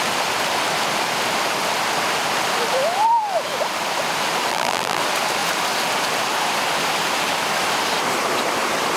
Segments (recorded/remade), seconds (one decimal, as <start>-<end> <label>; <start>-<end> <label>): 0.0-4.5 recorded; 4.5-5.0 remade; 5.0-9.0 recorded